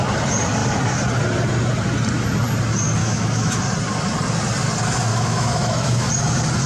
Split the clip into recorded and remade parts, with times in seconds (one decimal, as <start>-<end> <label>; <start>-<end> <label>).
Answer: 0.0-3.0 recorded; 3.0-3.6 remade; 3.6-5.1 recorded; 5.1-6.1 remade; 6.1-6.7 recorded